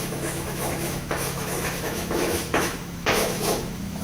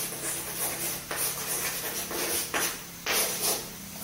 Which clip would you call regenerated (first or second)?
first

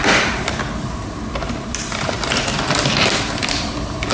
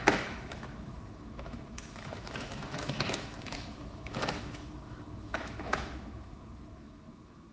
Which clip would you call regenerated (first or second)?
second